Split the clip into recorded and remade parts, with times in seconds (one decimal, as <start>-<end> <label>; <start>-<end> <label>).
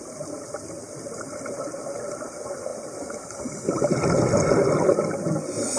0.0-5.8 recorded